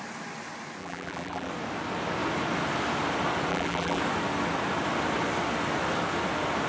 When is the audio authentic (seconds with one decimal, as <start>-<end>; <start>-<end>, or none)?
0.0-0.8; 1.5-3.5; 4.0-6.7